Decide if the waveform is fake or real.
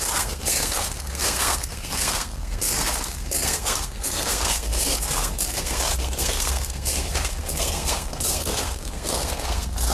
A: fake